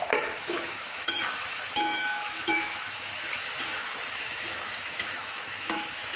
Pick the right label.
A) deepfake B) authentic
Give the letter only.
A